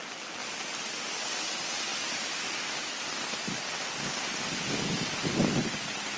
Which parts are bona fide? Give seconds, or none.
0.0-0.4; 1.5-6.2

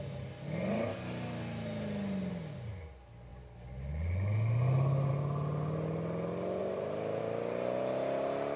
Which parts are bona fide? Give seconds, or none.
0.0-6.6; 7.2-8.6

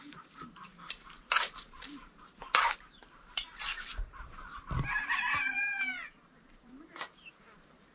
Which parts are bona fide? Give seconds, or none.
5.9-6.5

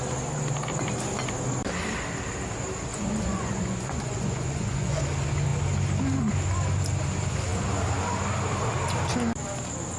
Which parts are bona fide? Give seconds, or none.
0.0-2.9; 5.0-10.0

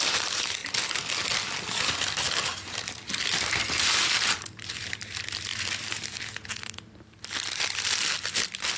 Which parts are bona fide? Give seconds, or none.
0.6-2.7; 5.5-8.8